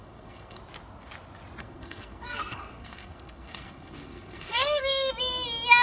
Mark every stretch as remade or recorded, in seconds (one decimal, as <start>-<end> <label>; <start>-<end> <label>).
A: 0.0-0.6 remade; 0.6-1.6 recorded; 1.6-5.1 remade; 5.1-5.8 recorded